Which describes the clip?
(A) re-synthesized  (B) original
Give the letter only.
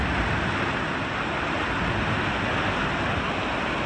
B